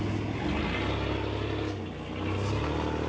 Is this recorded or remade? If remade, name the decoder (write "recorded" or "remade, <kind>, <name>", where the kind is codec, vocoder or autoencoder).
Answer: recorded